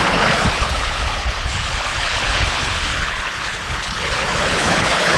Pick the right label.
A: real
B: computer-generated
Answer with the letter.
B